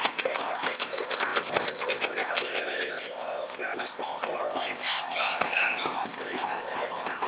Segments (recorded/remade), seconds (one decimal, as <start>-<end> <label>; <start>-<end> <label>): 0.0-7.3 remade